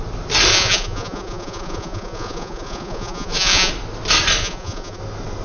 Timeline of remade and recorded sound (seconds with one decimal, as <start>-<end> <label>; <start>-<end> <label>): 0.0-0.5 recorded; 0.5-3.7 remade; 3.7-4.4 recorded; 4.4-5.0 remade; 5.0-5.4 recorded